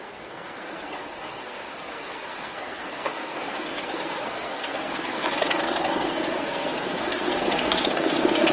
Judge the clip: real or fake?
fake